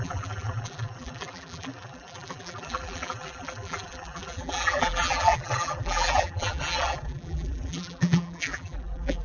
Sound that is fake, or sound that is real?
fake